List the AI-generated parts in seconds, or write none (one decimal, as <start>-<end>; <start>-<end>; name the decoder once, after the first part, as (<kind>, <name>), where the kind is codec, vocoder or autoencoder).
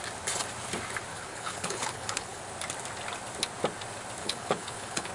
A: 1.1-2.4 (codec, HILCodec); 4.2-5.1